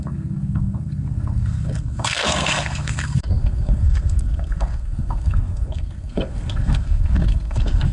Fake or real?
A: fake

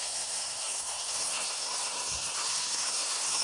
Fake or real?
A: fake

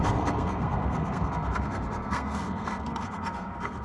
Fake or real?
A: fake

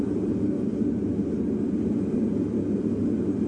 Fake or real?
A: real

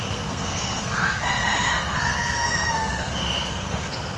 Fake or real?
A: fake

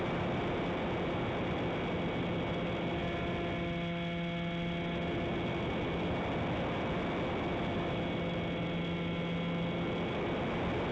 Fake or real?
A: real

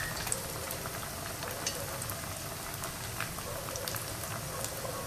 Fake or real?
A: real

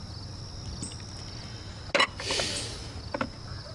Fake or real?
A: real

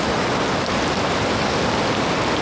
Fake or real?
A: real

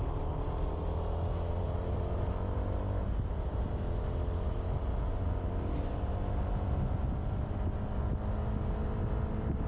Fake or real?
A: real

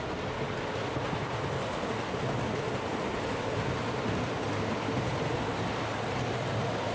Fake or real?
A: real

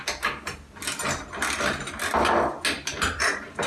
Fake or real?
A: real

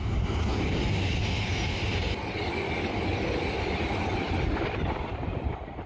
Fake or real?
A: real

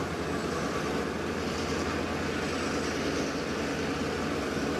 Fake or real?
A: real